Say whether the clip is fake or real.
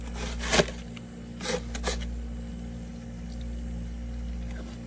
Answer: real